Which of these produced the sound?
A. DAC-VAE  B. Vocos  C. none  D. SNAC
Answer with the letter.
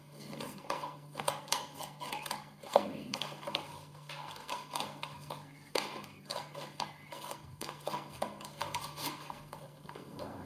D